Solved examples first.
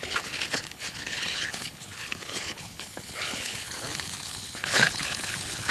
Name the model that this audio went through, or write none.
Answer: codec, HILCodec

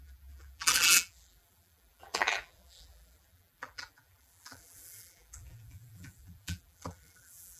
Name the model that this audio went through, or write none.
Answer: vocoder, BigVGAN v2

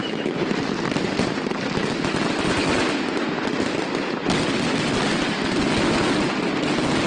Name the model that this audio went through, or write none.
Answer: none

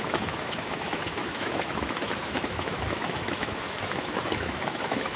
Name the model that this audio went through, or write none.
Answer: autoencoder, DAC-VAE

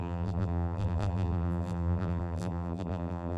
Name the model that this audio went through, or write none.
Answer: vocoder, BigVGAN v2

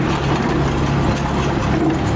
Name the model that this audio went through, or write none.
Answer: none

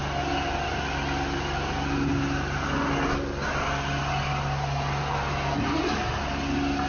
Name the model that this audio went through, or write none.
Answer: none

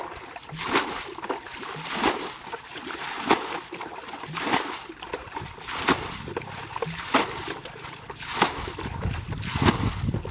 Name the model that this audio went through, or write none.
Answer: none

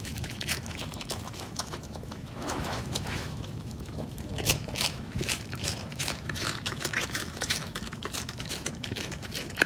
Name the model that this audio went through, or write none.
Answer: autoencoder, DAC-VAE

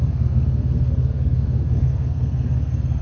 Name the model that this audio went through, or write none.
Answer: codec, SNAC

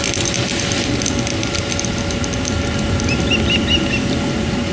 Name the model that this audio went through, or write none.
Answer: none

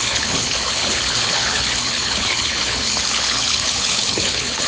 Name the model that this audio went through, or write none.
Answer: codec, HILCodec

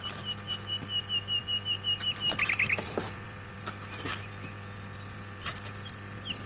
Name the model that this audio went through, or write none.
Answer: vocoder, BigVGAN v2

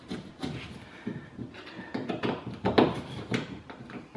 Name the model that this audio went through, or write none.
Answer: none